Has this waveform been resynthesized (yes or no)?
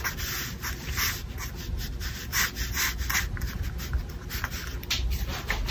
no